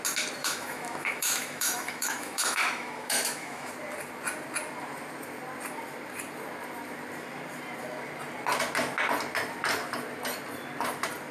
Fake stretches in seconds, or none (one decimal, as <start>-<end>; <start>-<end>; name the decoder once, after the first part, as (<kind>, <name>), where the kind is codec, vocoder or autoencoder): 0.4-3.7 (autoencoder, DAC-VAE)